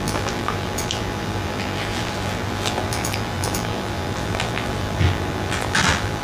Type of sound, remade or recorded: remade